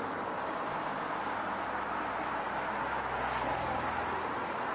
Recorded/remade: recorded